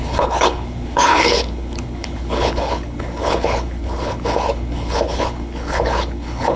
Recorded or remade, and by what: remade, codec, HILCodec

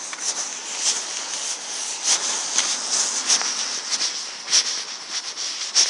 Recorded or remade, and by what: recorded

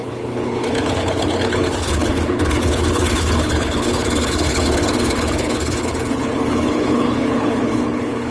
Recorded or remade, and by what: remade, codec, HILCodec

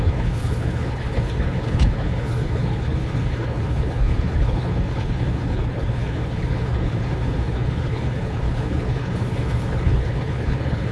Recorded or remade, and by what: remade, codec, HILCodec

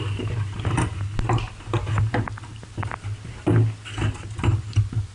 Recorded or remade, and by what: recorded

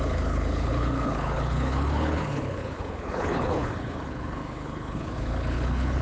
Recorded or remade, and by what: remade, codec, HILCodec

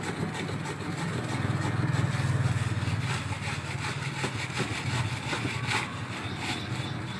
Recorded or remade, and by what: recorded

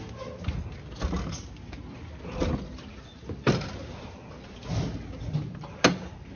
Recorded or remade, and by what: recorded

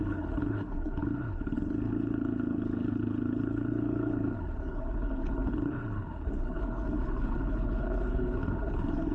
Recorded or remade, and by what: remade, codec, HILCodec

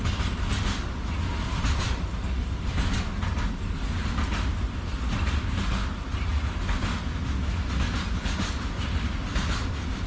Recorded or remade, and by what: recorded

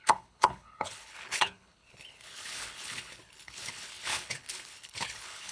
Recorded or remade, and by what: remade, codec, HILCodec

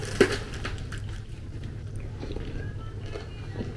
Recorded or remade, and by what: recorded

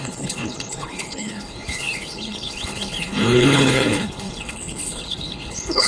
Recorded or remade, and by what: remade, codec, HILCodec